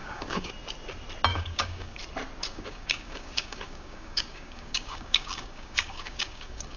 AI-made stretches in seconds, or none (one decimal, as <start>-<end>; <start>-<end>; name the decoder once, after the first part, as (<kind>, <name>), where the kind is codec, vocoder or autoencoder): 0.0-0.5 (codec, DAC); 1.3-2.0; 2.5-6.8